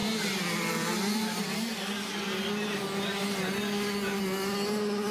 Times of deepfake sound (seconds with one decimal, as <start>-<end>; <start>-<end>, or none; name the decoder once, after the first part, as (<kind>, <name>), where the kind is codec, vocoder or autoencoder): 0.0-2.1 (vocoder, BigVGAN v2)